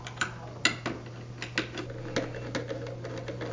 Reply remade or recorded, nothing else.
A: recorded